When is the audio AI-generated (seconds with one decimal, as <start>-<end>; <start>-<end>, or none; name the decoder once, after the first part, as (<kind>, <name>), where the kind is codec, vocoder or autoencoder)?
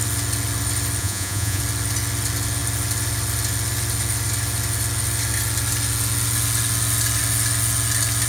1.0-1.6 (vocoder, Vocos)